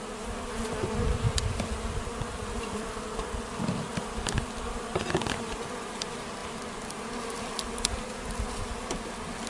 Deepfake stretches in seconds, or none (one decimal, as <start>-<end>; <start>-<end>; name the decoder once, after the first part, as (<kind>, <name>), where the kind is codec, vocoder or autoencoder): none